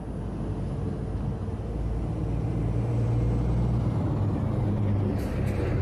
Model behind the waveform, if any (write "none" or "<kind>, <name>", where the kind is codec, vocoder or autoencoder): none